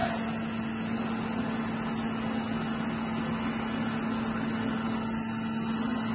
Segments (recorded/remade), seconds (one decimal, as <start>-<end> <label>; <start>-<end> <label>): 0.0-6.1 recorded